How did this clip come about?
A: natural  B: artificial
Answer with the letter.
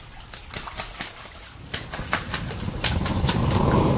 A